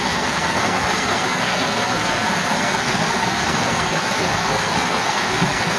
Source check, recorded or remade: remade